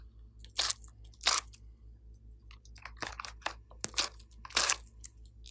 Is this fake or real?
real